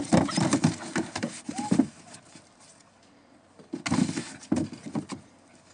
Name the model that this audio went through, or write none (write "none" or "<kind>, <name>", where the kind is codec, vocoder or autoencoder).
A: none